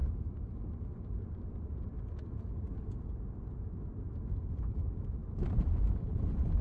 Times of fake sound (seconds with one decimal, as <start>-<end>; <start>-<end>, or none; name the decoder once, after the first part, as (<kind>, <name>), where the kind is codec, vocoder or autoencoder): 0.0-1.9 (vocoder, BigVGAN v2); 4.4-6.6